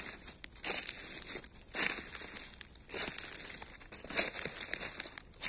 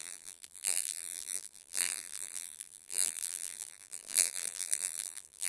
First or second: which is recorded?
first